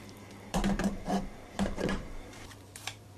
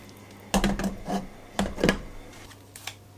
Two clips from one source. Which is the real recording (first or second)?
second